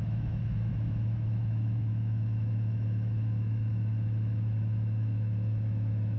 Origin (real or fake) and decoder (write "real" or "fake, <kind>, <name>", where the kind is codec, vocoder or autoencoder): fake, autoencoder, DAC-VAE